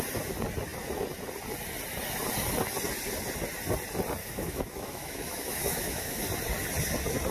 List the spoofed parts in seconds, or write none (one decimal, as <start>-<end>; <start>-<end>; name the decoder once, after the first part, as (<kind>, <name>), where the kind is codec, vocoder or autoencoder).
4.2-6.2 (autoencoder, DAC-VAE)